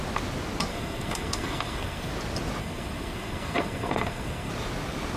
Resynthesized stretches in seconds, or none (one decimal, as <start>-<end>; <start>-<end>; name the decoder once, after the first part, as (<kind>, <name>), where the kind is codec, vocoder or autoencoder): 0.7-2.1 (codec, SNAC); 2.6-4.5